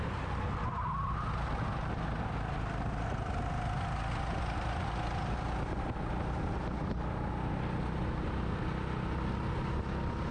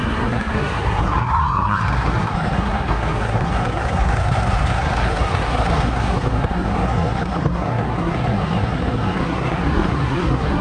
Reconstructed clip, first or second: second